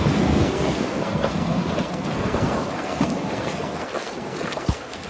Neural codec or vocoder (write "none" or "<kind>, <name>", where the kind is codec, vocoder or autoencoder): codec, SNAC